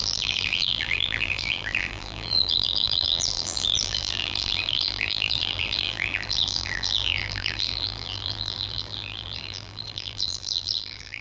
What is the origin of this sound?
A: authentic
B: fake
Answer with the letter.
B